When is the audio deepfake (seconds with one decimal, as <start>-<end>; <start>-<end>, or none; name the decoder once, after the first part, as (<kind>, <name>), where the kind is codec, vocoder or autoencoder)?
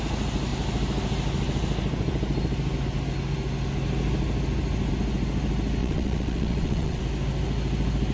5.8-7.0 (vocoder, WaveNeXt)